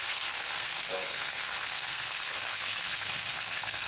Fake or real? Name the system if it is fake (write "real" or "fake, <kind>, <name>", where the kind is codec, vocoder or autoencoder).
fake, codec, SNAC